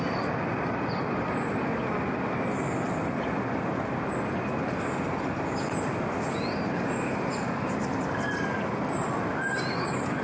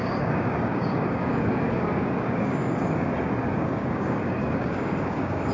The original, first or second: first